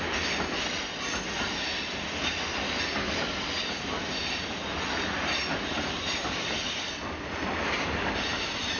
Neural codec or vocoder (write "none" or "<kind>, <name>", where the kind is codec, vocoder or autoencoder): none